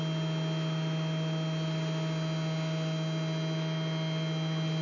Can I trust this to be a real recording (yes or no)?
yes